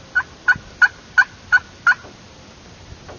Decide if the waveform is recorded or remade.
recorded